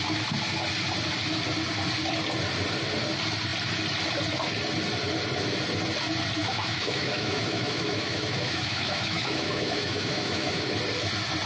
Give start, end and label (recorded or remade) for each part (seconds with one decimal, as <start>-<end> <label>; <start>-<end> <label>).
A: 0.0-6.4 recorded; 6.4-10.7 remade; 10.7-11.5 recorded